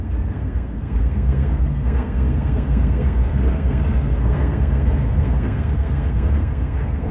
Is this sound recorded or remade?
remade